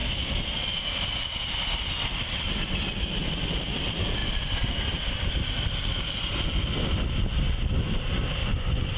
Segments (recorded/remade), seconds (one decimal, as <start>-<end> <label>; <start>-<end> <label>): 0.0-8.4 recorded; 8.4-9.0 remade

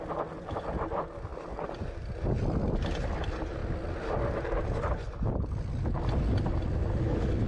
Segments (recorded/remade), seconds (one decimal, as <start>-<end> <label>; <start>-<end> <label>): 0.0-7.5 recorded

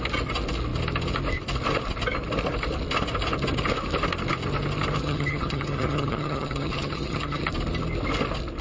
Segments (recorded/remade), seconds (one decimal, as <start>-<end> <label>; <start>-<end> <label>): 0.0-5.0 recorded; 5.0-7.5 remade; 7.5-8.6 recorded